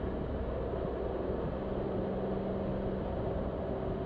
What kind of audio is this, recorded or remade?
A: recorded